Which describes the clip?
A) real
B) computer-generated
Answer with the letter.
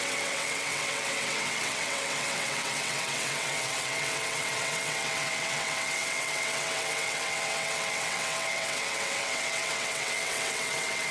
B